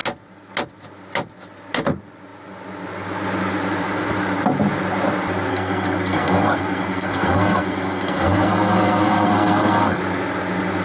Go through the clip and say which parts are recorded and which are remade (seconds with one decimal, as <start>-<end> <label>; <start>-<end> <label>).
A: 0.0-5.5 recorded; 5.5-10.0 remade; 10.0-10.8 recorded